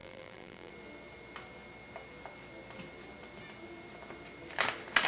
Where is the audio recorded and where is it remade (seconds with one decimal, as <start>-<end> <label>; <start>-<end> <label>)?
0.0-0.7 remade; 0.7-5.1 recorded

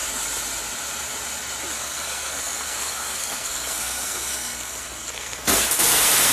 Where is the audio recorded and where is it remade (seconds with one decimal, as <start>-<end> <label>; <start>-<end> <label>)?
0.0-1.7 recorded; 1.7-6.3 remade

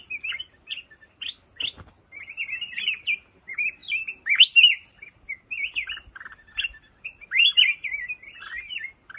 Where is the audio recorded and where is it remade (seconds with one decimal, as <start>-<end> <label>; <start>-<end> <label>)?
0.0-9.2 recorded

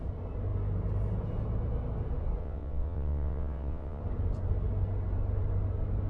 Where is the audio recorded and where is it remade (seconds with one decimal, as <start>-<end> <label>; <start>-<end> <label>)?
0.0-2.4 recorded; 2.4-4.0 remade; 4.0-6.1 recorded

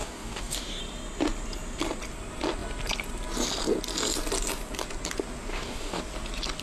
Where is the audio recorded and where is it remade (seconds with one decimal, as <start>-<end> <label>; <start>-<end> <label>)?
0.0-0.8 remade; 0.8-5.5 recorded; 5.5-6.0 remade; 6.0-6.6 recorded

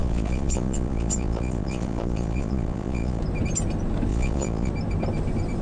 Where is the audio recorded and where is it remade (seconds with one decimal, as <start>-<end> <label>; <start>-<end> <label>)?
0.0-3.2 remade; 3.2-4.1 recorded; 4.1-4.7 remade; 4.7-5.6 recorded